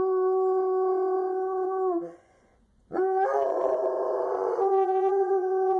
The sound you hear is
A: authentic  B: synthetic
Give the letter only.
B